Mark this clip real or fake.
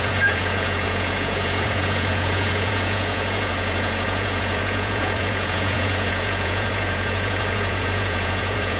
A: fake